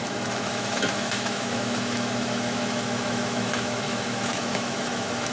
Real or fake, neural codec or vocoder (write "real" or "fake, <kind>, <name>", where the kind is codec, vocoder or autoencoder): fake, autoencoder, DAC-VAE